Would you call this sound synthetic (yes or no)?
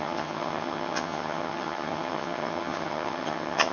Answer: yes